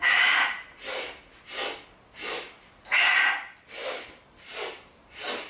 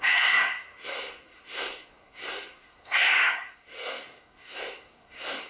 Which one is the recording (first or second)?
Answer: first